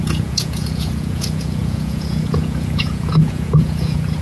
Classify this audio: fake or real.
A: fake